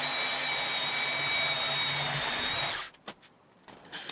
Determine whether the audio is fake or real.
real